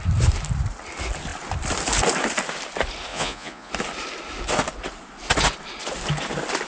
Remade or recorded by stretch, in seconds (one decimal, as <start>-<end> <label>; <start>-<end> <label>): 0.0-3.1 recorded; 3.1-3.7 remade; 3.7-6.7 recorded